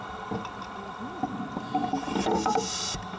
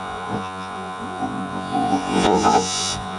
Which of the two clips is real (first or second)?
first